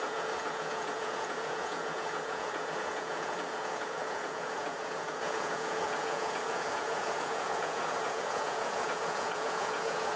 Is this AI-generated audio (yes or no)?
yes